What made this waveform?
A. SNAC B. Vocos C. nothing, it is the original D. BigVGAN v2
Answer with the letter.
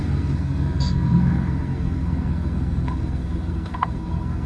A